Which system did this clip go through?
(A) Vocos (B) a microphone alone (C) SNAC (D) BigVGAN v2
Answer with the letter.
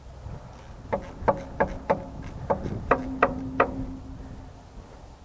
B